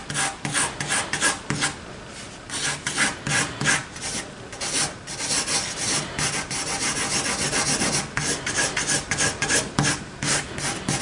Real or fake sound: real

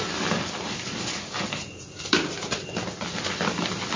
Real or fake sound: real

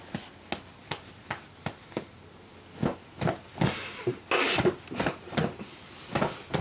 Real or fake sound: real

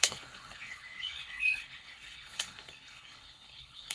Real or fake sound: fake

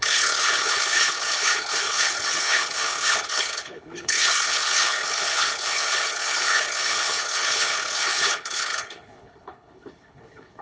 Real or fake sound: fake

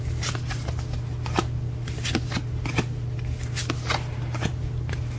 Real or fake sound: real